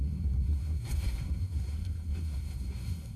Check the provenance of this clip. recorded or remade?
remade